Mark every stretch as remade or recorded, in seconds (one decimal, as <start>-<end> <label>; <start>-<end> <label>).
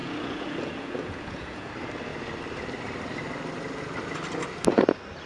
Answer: 0.0-1.7 remade; 1.7-5.3 recorded